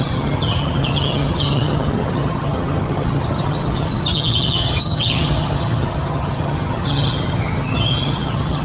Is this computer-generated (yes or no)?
yes